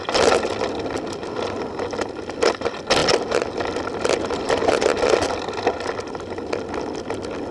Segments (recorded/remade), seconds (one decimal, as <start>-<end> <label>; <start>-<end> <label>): 0.0-7.5 recorded